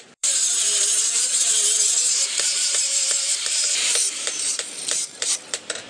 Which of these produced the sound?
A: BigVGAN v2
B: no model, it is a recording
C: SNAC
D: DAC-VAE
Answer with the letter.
A